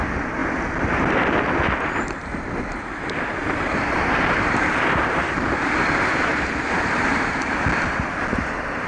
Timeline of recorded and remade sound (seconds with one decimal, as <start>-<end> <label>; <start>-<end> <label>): 0.0-3.4 recorded; 3.4-7.5 remade; 7.5-8.9 recorded